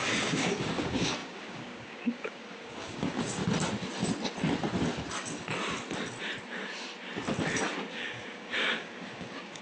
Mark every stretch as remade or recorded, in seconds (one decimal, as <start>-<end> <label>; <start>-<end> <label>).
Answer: 0.0-3.4 remade; 3.4-7.9 recorded; 7.9-9.6 remade